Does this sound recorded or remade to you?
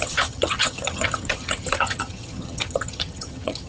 remade